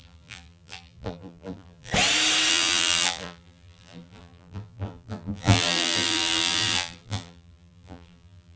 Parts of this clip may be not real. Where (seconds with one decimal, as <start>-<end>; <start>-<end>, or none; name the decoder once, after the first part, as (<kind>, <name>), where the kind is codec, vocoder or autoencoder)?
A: 0.0-1.9 (vocoder, BigVGAN v2); 2.5-8.6

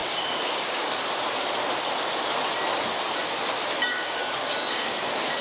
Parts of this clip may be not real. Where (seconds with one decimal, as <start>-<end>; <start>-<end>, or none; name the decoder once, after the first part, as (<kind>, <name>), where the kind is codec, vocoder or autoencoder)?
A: 0.0-1.0 (codec, DAC); 3.9-4.9

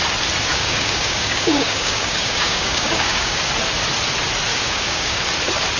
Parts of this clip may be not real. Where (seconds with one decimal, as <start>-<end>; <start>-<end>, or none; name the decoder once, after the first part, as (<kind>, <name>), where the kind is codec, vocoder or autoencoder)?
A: 0.5-3.5 (codec, DAC); 4.5-5.2

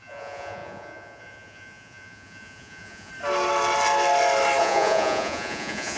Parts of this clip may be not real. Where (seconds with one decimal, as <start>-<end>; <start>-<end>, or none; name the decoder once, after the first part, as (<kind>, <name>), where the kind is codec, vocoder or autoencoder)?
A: 0.0-3.1 (vocoder, Vocos); 4.6-6.0

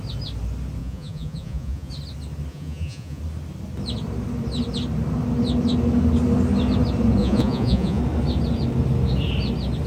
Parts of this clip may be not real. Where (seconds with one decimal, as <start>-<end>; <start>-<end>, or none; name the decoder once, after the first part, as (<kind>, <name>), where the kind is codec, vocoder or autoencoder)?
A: 0.8-1.9 (vocoder, Vocos); 2.5-3.2; 7.2-8.0

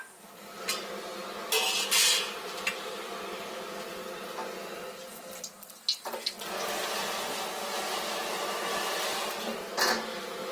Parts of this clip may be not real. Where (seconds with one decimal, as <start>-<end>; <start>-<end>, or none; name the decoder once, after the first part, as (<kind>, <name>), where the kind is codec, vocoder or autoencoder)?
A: none

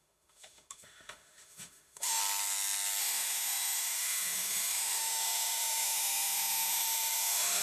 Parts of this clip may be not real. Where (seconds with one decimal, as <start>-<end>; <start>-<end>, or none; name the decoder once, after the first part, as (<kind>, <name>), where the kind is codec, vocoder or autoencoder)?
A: 0.0-2.2 (autoencoder, DAC-VAE); 3.0-7.6

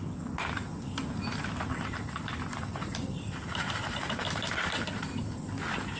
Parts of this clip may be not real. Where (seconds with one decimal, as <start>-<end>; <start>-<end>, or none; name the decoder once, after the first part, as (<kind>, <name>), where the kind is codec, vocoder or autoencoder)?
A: 1.7-5.3 (vocoder, BigVGAN v2)